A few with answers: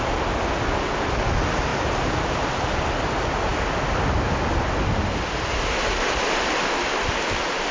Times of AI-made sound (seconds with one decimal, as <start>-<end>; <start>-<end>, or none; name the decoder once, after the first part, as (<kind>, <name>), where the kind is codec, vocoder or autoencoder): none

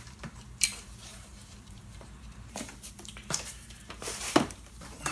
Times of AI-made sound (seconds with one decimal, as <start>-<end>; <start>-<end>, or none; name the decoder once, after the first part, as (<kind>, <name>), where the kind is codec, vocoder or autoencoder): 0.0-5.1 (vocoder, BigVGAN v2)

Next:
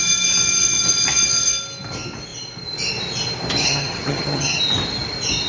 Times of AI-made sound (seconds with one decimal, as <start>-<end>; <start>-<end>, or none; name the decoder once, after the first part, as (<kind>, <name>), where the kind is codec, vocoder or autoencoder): 3.6-4.6 (vocoder, HiFi-GAN)

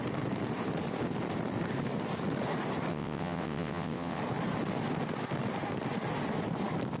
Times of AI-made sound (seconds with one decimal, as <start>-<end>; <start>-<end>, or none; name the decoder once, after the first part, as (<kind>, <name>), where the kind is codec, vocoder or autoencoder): 2.9-4.2 (vocoder, WaveNeXt)

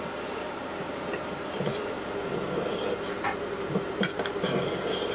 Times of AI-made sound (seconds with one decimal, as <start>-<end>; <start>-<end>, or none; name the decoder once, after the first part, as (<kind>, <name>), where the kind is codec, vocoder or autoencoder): 0.0-1.7 (vocoder, BigVGAN v2); 3.2-5.1

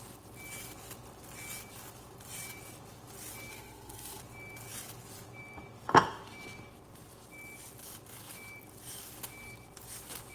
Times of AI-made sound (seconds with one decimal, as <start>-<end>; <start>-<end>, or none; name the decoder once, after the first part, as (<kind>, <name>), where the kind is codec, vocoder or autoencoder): 3.5-4.2 (codec, SNAC)

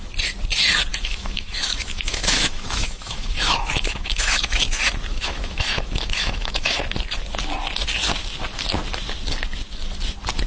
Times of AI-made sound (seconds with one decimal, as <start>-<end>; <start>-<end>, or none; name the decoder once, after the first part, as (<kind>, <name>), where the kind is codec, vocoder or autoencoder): 0.9-4.6 (autoencoder, DAC-VAE); 5.1-6.8